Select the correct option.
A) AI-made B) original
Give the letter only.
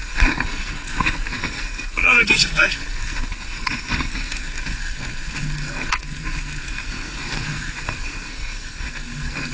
A